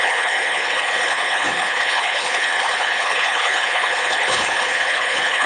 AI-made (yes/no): yes